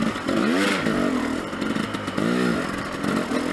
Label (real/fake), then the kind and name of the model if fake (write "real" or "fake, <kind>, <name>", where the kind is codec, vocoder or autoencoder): real